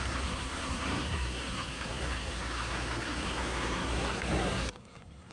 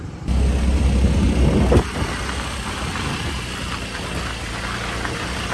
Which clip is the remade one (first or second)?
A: first